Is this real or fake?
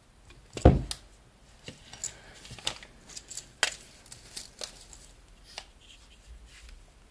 real